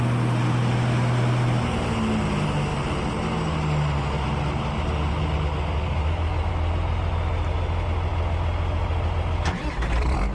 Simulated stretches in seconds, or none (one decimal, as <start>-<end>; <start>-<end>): none